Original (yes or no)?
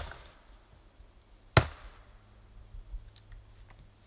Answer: yes